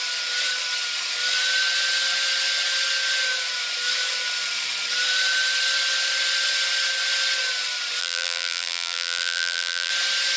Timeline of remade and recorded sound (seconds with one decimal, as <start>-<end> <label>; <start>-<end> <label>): 0.0-8.0 recorded; 8.0-9.9 remade; 9.9-10.4 recorded